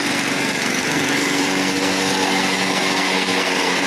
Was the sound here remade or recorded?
remade